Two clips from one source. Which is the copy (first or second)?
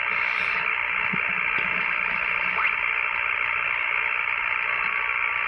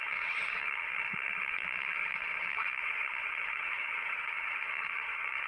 second